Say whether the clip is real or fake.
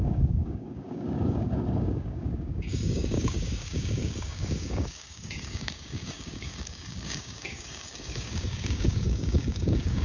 fake